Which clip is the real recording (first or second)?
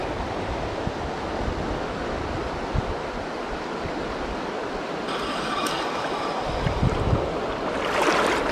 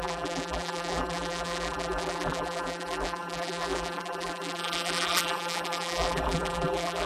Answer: first